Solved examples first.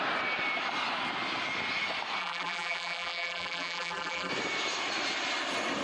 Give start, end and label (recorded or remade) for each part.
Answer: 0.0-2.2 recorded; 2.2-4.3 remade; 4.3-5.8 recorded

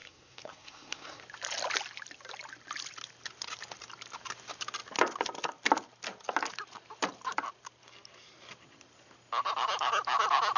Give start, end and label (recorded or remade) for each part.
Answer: 0.0-1.2 remade; 1.2-10.6 recorded